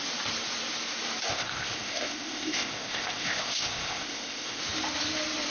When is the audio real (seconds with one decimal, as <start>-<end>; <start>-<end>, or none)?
0.0-1.3; 4.6-5.5